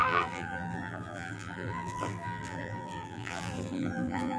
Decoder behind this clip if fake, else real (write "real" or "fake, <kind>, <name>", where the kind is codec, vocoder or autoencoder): fake, vocoder, BigVGAN v2